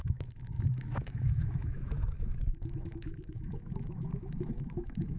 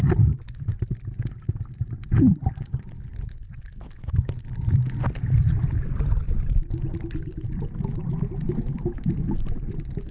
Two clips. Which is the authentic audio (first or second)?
second